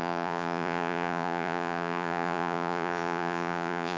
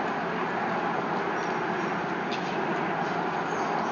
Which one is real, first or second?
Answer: second